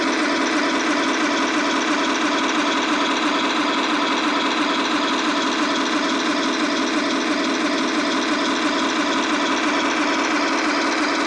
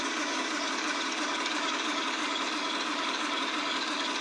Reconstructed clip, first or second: second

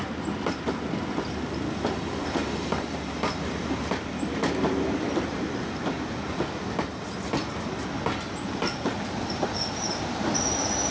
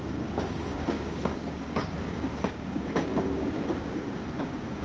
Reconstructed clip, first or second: second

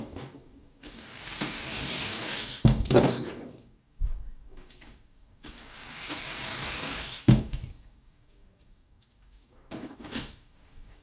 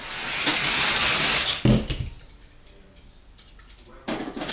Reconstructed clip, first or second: first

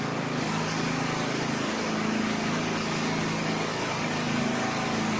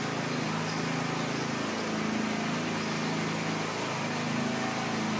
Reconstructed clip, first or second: first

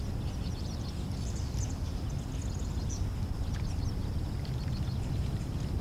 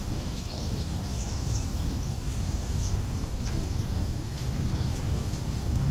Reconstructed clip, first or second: second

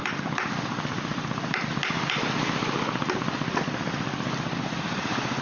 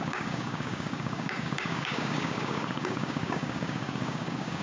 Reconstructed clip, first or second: second